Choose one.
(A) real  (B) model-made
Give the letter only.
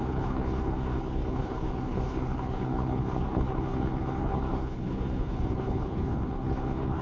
B